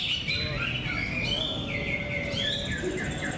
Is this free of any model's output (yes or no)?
yes